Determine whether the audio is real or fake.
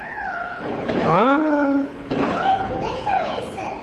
fake